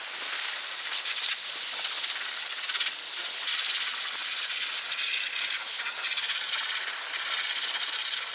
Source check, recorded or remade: recorded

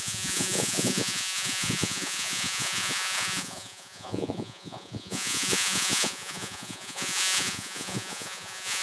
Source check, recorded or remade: remade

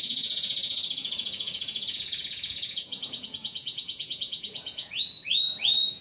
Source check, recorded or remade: remade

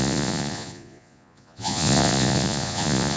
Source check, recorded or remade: remade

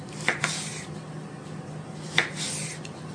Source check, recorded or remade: recorded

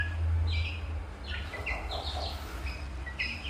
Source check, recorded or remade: recorded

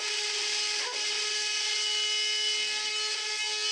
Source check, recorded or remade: recorded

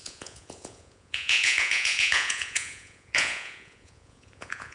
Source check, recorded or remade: remade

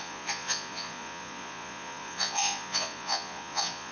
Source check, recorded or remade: remade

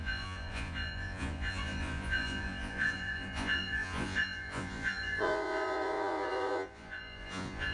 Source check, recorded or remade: remade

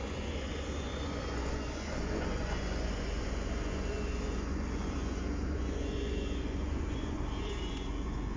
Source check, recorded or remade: remade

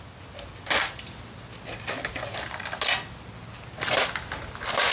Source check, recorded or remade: recorded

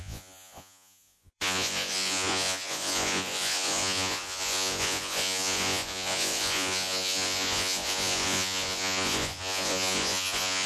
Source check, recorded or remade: remade